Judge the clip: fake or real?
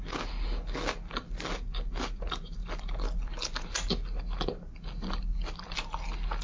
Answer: real